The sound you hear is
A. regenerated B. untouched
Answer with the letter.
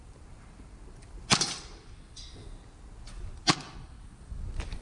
B